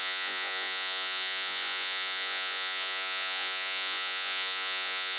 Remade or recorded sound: remade